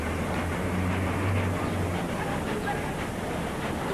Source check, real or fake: real